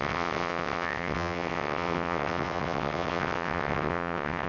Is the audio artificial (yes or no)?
yes